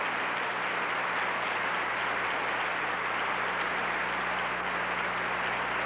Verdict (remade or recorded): recorded